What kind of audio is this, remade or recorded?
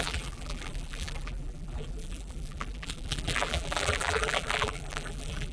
remade